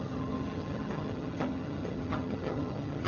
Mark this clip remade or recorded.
remade